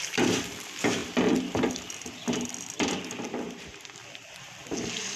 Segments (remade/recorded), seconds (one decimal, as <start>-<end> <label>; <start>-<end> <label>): 0.0-1.0 recorded; 1.0-4.1 remade; 4.1-5.2 recorded